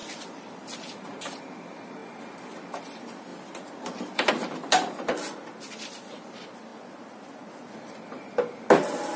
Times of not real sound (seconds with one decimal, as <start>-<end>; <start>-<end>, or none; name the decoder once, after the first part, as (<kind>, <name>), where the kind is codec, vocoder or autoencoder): 0.0-2.0 (vocoder, BigVGAN v2); 2.8-6.7